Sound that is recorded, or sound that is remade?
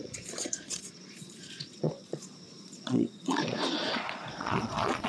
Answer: remade